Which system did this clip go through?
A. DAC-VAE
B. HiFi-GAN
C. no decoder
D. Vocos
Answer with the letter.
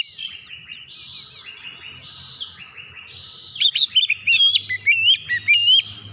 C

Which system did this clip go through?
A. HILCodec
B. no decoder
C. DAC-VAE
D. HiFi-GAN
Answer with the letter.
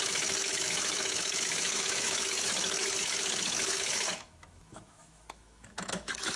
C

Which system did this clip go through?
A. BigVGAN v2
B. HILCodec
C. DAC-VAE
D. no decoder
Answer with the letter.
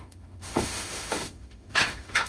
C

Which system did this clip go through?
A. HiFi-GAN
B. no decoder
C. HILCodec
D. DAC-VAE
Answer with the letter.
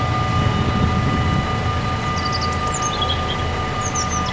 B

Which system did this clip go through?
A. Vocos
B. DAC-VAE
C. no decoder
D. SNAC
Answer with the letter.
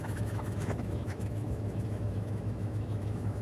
B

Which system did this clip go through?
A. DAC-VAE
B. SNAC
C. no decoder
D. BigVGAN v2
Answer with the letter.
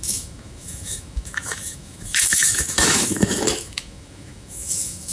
A